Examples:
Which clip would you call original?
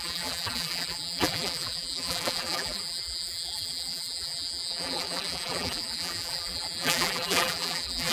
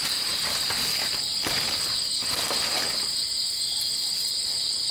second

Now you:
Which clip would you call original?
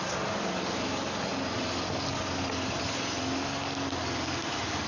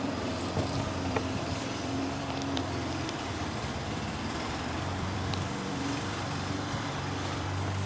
first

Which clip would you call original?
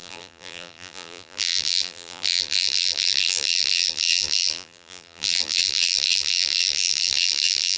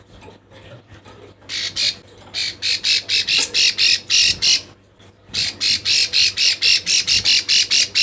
second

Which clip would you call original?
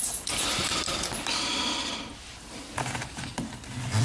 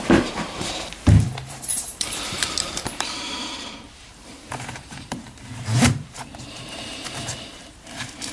first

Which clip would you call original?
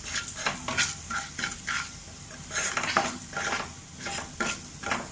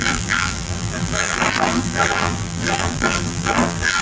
first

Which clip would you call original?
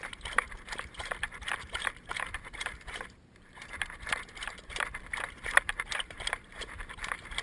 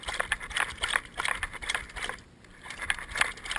second